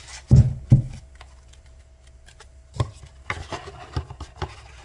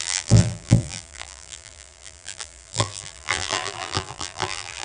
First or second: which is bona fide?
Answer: first